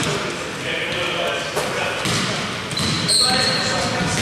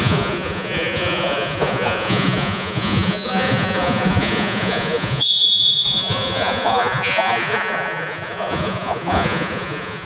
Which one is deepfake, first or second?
second